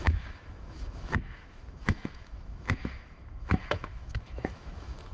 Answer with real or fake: fake